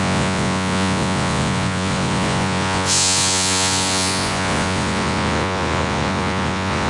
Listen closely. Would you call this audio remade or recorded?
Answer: remade